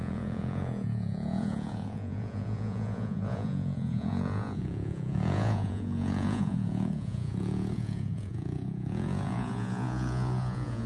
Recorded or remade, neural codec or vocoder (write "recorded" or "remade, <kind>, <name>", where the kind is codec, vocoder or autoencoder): remade, vocoder, Vocos